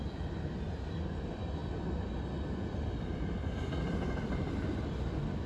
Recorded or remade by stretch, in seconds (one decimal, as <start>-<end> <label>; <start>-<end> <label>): 0.0-5.5 recorded